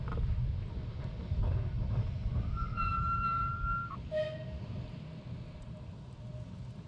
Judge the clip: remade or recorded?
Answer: recorded